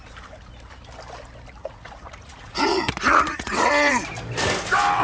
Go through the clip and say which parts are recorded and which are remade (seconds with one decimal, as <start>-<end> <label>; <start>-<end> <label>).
0.0-1.6 recorded; 1.6-3.7 remade; 3.7-5.0 recorded